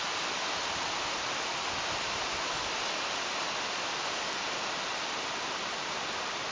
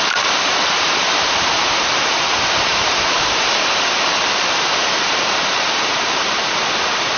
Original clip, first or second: first